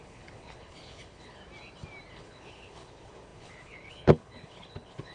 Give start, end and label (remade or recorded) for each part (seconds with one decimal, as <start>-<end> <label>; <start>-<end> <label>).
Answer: 0.0-1.4 remade; 1.4-2.1 recorded; 2.1-5.1 remade